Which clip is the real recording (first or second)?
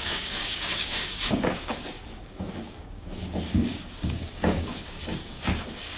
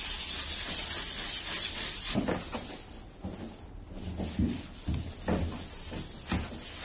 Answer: second